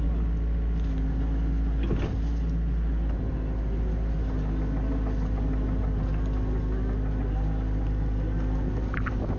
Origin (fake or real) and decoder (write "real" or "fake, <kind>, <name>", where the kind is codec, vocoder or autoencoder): real